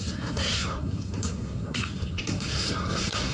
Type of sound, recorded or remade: remade